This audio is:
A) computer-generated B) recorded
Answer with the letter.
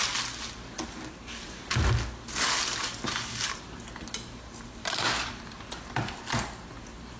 B